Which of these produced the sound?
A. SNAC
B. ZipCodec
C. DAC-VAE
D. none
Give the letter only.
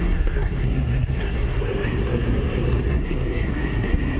A